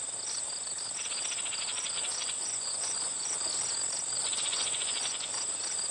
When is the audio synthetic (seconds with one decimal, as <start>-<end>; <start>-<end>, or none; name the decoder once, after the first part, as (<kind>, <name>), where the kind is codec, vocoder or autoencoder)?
1.7-3.5 (vocoder, Vocos); 4.2-5.3